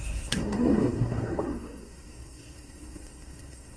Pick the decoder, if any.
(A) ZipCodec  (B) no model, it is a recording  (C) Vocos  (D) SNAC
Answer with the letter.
D